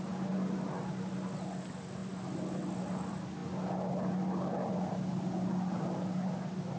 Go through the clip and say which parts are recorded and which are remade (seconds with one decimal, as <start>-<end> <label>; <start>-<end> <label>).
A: 0.0-6.8 recorded